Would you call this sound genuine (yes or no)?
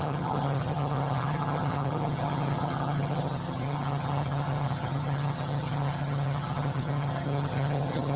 no